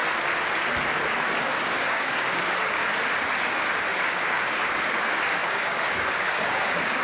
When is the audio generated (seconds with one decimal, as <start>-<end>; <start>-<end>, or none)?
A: 1.4-2.8; 3.4-7.0